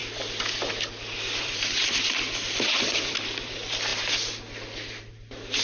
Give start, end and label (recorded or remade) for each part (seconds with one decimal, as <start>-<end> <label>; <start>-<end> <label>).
0.0-3.9 remade; 3.9-5.0 recorded; 5.0-5.6 remade